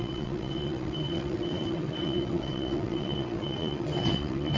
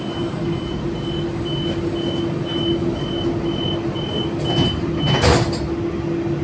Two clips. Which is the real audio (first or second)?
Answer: second